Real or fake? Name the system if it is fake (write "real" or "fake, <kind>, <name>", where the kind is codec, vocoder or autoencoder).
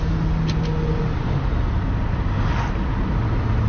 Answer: real